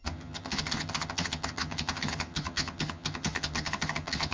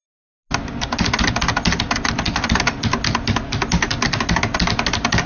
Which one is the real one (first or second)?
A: second